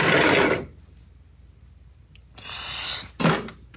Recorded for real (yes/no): yes